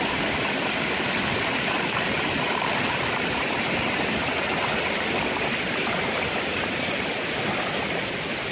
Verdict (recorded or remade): recorded